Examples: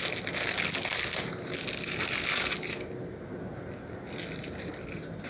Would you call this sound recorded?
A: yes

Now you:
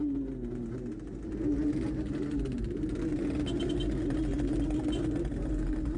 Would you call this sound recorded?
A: yes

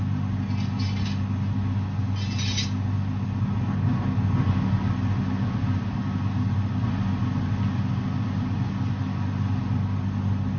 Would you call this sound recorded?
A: yes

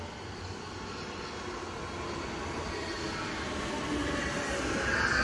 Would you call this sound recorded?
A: yes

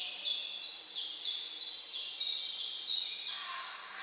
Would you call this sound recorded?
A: yes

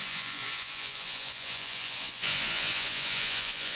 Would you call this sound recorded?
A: no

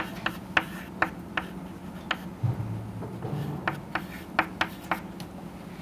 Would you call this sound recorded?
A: yes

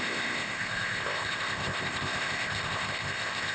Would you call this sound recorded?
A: no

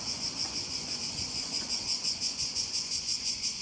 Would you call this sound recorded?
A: no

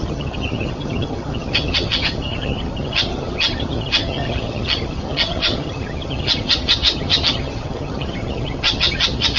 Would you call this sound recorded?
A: no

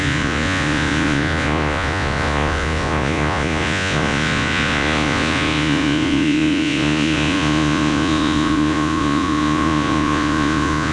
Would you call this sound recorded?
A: no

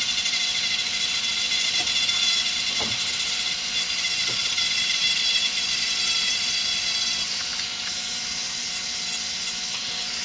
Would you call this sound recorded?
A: yes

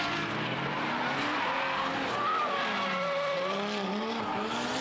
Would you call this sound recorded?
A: yes